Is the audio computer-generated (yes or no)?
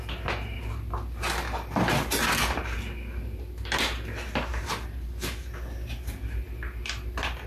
no